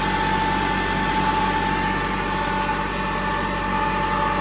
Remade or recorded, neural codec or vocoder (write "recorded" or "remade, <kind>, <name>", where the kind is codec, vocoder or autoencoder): recorded